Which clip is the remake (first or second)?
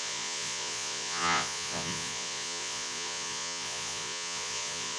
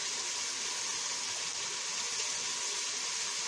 first